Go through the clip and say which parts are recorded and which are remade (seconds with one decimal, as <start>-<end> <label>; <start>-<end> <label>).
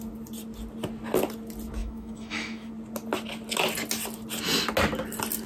0.0-1.8 recorded; 1.8-2.7 remade; 2.7-5.5 recorded